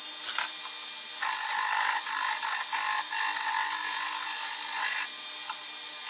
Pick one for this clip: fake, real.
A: real